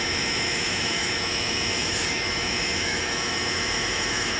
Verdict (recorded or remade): remade